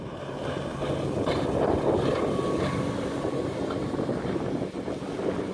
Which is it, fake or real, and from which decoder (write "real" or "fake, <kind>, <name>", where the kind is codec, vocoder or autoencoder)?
real